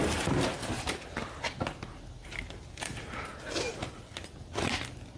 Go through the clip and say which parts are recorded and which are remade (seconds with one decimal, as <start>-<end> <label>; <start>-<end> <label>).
0.0-2.2 recorded; 2.2-2.9 remade; 2.9-5.2 recorded